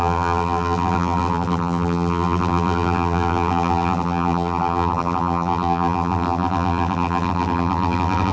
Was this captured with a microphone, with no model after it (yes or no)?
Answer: no